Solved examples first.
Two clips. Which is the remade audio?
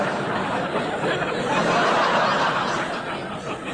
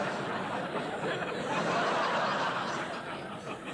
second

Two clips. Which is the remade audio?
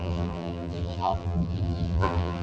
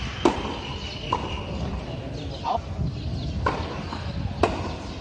first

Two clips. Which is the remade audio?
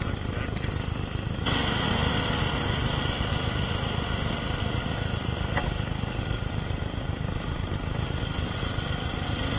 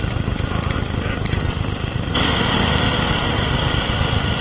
second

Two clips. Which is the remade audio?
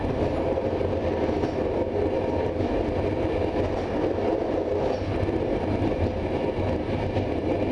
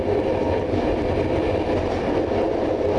second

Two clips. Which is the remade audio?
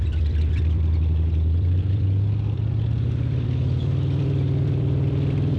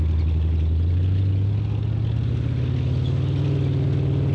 first